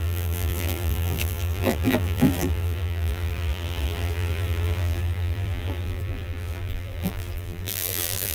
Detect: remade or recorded remade